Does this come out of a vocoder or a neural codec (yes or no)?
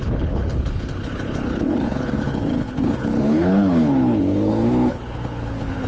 yes